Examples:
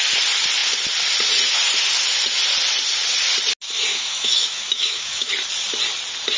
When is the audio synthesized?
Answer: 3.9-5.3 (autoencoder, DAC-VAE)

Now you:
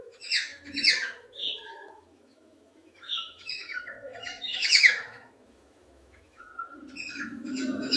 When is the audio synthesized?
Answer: 0.0-6.5 (autoencoder, DAC-VAE); 7.1-8.0

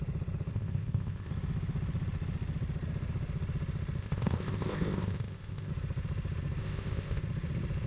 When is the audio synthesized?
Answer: 0.5-1.3 (codec, ZipCodec); 4.0-5.7; 6.6-7.2

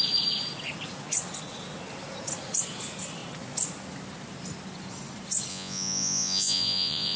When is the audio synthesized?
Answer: 5.5-7.2 (vocoder, Vocos)

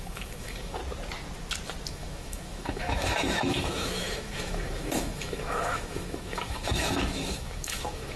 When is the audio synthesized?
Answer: 0.0-0.8 (autoencoder, DAC-VAE); 1.9-8.2

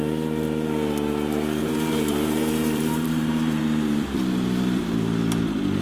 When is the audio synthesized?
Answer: 1.6-3.6 (vocoder, BigVGAN v2)

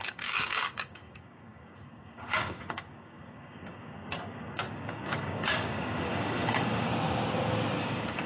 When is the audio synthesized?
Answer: 0.0-6.9 (codec, DAC); 7.8-8.3